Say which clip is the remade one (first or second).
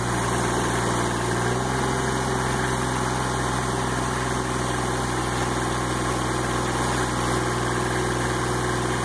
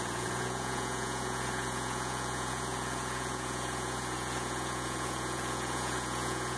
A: second